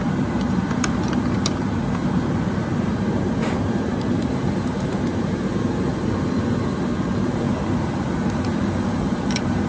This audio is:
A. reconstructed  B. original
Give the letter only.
A